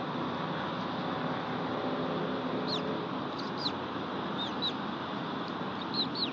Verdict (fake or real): real